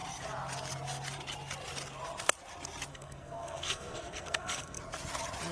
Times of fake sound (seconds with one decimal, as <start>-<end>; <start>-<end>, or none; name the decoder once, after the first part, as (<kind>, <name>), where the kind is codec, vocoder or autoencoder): 2.9-4.8 (codec, SNAC)